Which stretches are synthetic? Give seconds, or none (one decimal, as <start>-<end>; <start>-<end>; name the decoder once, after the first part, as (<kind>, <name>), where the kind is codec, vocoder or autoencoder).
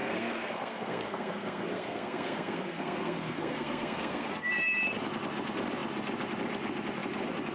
0.0-4.5 (codec, SNAC)